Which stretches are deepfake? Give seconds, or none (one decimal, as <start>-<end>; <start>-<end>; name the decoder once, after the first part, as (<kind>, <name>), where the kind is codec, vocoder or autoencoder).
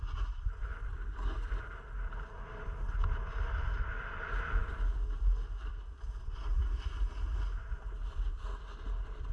none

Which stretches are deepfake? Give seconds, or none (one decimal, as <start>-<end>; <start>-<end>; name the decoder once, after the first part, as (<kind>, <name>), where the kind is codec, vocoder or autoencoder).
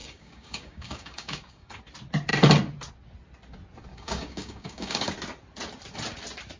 0.0-1.8 (codec, DAC); 3.9-5.1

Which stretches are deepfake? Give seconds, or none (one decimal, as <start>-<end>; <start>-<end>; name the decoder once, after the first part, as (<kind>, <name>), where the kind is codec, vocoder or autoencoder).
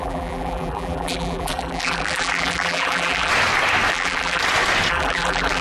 0.0-3.3 (vocoder, BigVGAN v2); 3.9-4.4; 4.9-5.6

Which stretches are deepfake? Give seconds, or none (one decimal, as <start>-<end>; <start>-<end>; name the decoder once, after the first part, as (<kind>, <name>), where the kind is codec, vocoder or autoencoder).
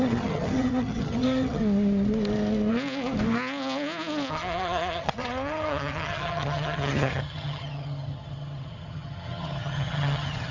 0.0-1.6 (vocoder, HiFi-GAN); 4.3-10.5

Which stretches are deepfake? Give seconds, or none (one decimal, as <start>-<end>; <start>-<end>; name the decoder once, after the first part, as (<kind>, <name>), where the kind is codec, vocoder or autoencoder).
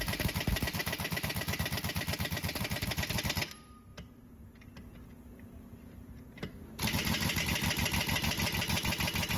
none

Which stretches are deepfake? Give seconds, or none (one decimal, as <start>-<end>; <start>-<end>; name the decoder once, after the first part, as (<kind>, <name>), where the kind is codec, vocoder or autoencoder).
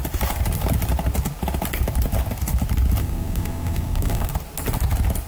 3.0-4.3 (codec, SNAC)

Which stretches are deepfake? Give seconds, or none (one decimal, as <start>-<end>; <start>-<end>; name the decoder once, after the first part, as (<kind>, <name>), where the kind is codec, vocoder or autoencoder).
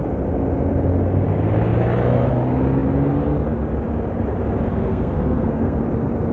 4.7-5.8 (codec, SNAC)